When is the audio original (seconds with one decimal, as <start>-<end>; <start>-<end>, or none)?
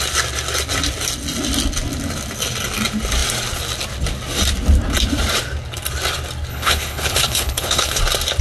0.0-6.5; 8.0-8.4